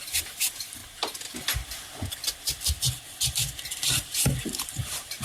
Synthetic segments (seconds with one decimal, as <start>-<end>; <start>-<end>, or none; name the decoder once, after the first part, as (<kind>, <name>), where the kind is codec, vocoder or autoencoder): 0.0-0.8 (vocoder, BigVGAN v2); 3.9-5.2